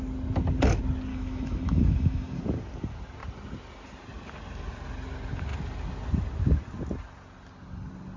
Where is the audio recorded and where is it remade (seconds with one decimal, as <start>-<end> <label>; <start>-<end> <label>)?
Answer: 0.0-1.1 recorded; 1.1-2.4 remade; 2.4-8.2 recorded